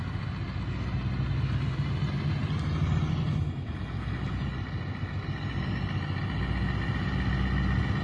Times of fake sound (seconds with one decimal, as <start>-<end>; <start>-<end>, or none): none